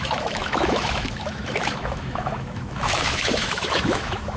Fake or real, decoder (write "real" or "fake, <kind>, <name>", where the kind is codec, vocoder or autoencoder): fake, autoencoder, DAC-VAE